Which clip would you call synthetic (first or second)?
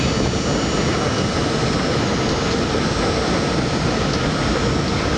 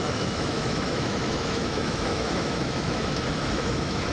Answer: second